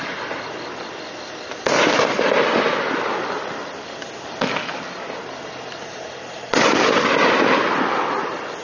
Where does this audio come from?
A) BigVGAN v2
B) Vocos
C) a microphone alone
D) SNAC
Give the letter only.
C